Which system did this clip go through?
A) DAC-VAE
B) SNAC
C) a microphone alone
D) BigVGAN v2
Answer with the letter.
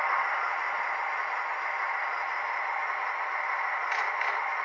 D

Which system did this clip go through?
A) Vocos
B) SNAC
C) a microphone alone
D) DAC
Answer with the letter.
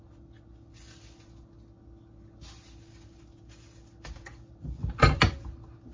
C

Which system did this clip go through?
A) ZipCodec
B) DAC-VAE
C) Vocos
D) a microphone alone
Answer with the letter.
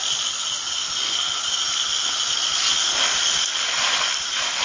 D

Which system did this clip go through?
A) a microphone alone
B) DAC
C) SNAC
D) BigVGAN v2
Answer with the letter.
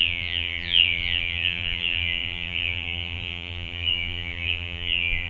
D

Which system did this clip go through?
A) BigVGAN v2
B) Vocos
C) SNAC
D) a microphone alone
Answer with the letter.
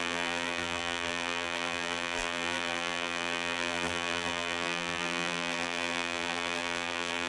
A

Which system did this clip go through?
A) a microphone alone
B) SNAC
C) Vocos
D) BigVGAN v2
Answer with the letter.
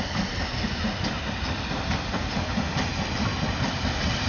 A